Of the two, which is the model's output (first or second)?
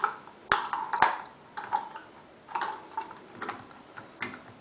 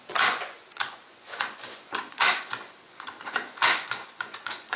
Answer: second